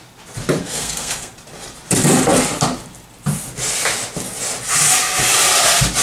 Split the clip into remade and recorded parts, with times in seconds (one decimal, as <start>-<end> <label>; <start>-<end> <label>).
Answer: 0.0-0.6 recorded; 0.6-1.3 remade; 1.3-6.0 recorded